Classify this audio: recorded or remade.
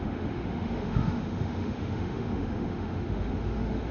remade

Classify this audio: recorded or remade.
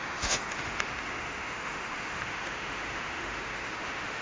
remade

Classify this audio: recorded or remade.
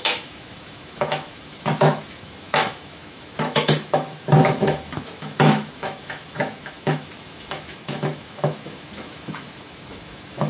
remade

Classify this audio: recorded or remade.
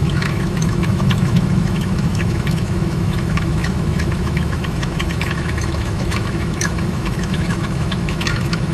remade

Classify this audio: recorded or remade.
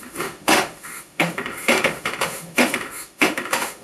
remade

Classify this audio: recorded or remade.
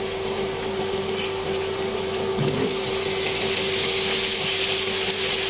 recorded